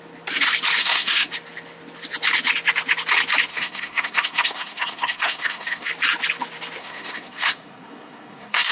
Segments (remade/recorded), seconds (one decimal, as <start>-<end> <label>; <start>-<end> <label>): 0.0-0.8 recorded; 0.8-1.3 remade; 1.3-3.5 recorded; 3.5-5.9 remade; 5.9-6.8 recorded; 6.8-8.7 remade